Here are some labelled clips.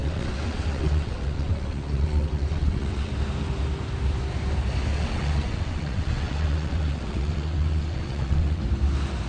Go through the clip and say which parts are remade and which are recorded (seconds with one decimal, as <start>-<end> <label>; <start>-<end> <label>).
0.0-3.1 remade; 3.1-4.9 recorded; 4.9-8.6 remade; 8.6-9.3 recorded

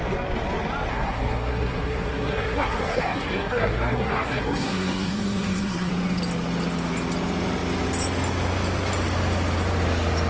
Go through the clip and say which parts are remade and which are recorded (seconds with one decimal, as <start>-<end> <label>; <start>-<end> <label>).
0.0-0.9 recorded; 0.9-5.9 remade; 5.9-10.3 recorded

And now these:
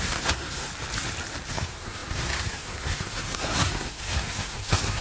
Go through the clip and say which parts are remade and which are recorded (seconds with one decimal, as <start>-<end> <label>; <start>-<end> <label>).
0.0-0.7 remade; 0.7-1.5 recorded; 1.5-5.0 remade

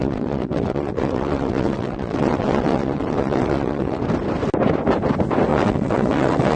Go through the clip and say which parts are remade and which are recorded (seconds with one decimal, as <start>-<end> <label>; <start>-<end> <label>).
0.0-4.0 remade; 4.0-5.5 recorded; 5.5-6.6 remade

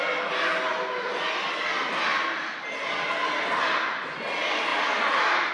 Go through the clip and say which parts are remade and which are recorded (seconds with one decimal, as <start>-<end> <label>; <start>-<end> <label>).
0.0-5.5 recorded

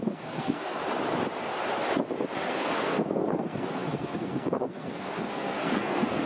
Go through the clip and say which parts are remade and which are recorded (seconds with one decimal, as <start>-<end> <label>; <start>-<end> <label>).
0.0-0.8 remade; 0.8-2.5 recorded; 2.5-6.3 remade

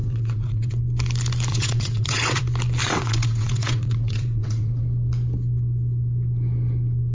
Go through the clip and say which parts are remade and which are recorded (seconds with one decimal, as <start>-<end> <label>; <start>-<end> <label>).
0.0-0.8 remade; 0.8-1.5 recorded; 1.5-2.4 remade; 2.4-2.8 recorded; 2.8-4.8 remade; 4.8-7.1 recorded